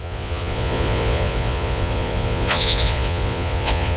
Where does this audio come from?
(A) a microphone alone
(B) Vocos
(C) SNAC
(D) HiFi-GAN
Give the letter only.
B